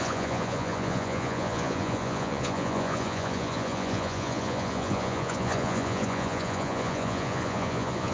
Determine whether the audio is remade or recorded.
remade